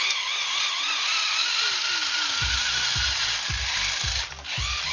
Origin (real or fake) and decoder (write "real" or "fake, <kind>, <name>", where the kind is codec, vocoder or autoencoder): real